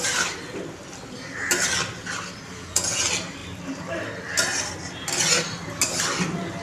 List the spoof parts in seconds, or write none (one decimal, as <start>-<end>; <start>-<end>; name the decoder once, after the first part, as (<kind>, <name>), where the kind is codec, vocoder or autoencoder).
2.5-3.0 (vocoder, Vocos)

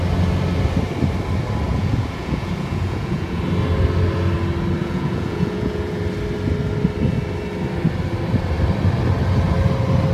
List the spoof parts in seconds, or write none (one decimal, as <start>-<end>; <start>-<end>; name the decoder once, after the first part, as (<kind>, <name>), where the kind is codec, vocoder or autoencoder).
1.7-3.4 (vocoder, Vocos); 4.8-6.0